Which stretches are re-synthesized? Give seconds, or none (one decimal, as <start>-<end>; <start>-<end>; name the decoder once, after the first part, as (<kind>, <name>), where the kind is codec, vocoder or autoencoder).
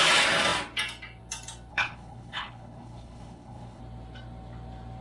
1.7-3.8 (codec, HILCodec)